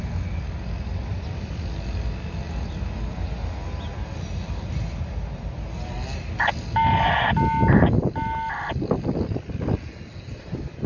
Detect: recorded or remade recorded